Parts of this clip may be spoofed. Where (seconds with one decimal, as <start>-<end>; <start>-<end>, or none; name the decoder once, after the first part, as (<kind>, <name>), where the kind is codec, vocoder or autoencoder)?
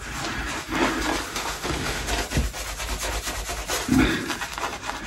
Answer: 1.3-2.1 (autoencoder, DAC-VAE)